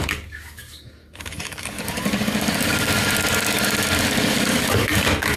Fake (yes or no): yes